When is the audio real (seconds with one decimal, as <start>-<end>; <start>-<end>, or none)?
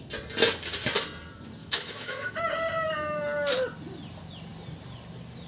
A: 0.0-1.6; 2.4-5.5